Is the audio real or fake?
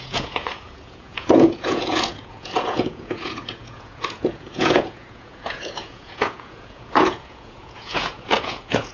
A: fake